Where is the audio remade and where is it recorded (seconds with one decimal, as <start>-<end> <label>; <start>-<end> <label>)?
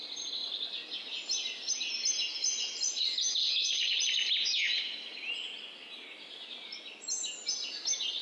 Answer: 0.0-3.4 recorded; 3.4-4.0 remade; 4.0-8.2 recorded